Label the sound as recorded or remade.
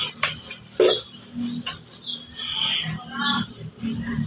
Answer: recorded